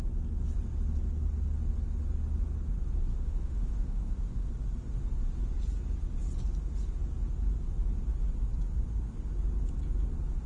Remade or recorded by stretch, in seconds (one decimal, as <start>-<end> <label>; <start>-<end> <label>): 0.0-3.1 recorded; 3.1-4.5 remade; 4.5-10.5 recorded